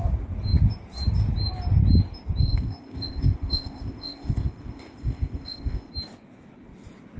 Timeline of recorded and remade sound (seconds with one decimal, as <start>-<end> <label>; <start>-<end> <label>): 0.0-2.4 recorded; 2.4-5.9 remade; 5.9-7.2 recorded